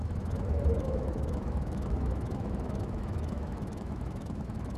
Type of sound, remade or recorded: remade